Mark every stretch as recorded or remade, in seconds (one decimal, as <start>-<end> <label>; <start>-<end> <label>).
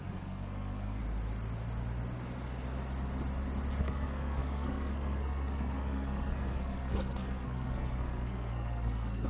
0.0-1.0 remade; 1.0-3.8 recorded; 3.8-9.3 remade